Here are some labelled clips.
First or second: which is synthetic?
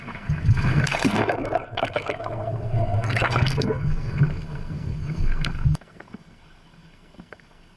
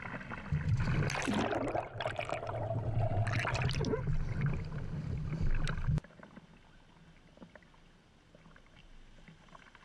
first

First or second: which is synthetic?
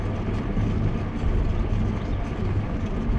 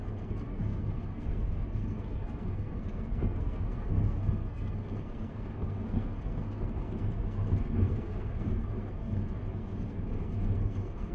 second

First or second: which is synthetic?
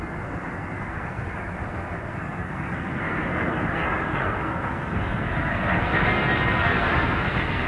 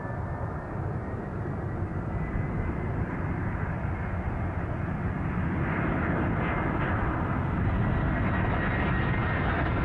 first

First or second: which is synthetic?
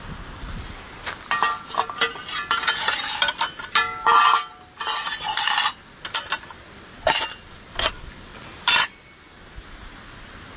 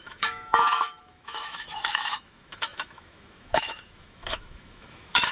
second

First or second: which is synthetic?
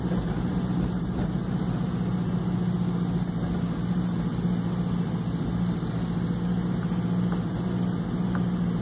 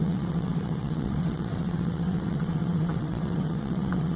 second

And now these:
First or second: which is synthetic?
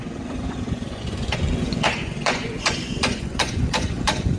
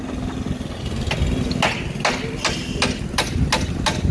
first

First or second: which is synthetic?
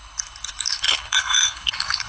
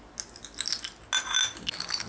first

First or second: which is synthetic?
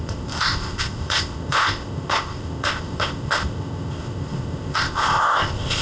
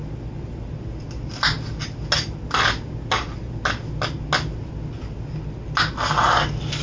first